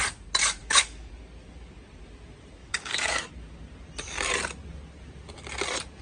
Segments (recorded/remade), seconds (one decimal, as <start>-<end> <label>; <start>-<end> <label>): 0.0-0.6 recorded; 0.6-1.1 remade; 1.1-2.6 recorded; 2.6-3.3 remade; 3.3-6.0 recorded